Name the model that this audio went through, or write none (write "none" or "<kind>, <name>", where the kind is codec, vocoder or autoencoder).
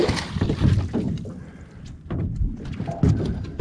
none